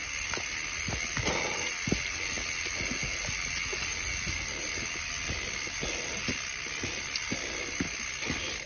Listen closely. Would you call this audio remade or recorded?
recorded